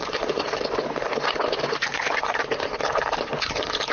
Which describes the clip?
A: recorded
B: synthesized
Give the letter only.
A